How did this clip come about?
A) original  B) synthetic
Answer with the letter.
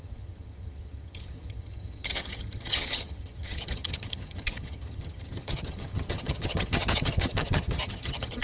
B